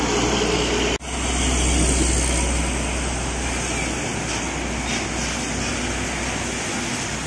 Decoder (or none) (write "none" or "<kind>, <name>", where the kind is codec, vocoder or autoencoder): none